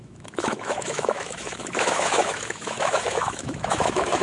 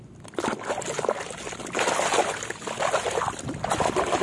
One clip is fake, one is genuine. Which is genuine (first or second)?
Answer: second